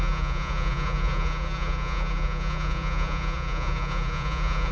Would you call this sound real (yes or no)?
no